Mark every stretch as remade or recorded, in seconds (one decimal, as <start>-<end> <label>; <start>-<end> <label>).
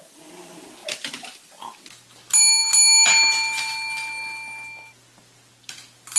0.0-6.2 recorded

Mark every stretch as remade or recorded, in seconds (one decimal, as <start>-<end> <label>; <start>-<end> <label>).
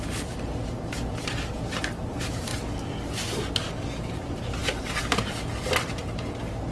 0.0-2.5 remade; 2.5-4.0 recorded; 4.0-6.7 remade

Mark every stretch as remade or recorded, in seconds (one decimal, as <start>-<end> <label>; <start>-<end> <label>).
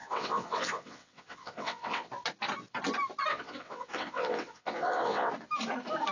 0.0-2.1 remade; 2.1-3.3 recorded; 3.3-5.3 remade; 5.3-6.1 recorded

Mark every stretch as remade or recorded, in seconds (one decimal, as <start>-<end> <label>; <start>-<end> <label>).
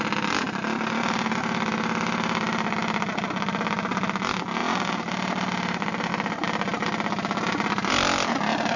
0.0-8.8 recorded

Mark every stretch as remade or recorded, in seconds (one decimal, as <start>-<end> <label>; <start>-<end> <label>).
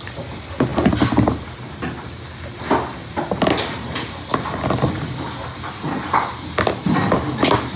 0.0-7.8 recorded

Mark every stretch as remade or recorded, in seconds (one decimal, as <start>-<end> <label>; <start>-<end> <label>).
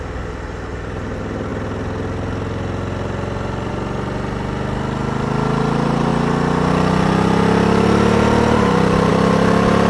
0.0-9.9 recorded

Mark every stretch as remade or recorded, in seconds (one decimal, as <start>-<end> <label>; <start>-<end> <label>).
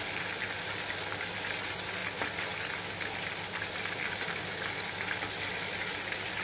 0.0-6.4 recorded